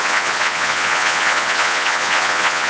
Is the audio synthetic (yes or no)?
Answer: yes